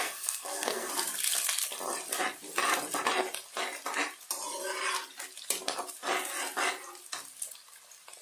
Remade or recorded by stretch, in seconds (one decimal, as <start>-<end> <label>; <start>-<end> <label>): 0.0-0.9 remade; 0.9-8.2 recorded